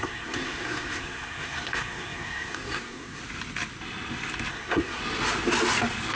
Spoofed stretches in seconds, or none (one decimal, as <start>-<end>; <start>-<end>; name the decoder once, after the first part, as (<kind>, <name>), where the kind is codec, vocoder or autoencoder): 0.0-3.2 (codec, SNAC); 4.5-5.0